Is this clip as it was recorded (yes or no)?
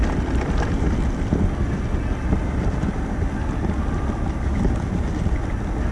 yes